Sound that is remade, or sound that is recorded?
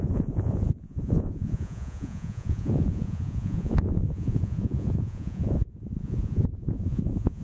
remade